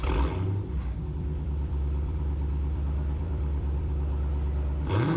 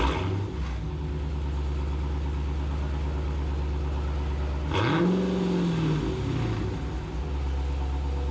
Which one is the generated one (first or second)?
first